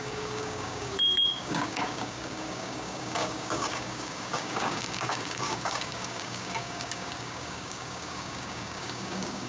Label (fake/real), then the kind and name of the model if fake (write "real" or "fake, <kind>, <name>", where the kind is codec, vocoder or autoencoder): fake, codec, DAC